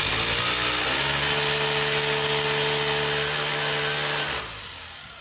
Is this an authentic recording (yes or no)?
yes